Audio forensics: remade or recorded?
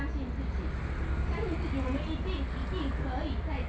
recorded